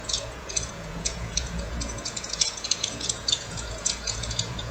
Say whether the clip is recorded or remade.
remade